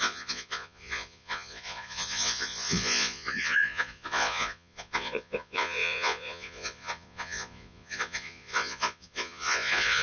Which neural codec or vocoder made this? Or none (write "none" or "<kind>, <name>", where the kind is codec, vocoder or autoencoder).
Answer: vocoder, Vocos